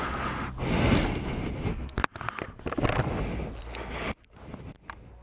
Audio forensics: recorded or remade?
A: recorded